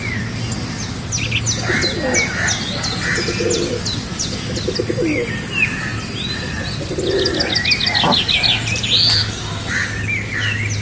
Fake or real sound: real